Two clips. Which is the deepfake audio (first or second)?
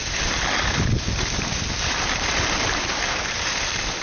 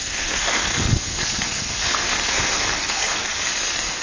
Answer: second